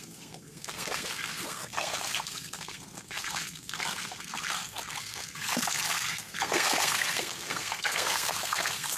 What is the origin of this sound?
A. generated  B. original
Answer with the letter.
A